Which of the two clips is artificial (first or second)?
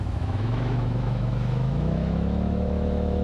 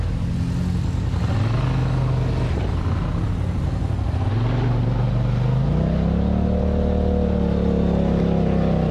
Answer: first